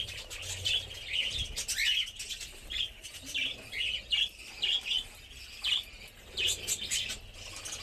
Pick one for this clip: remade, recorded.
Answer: recorded